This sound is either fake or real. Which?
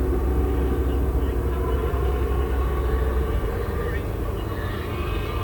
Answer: real